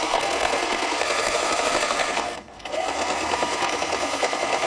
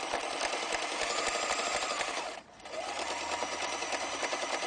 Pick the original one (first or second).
second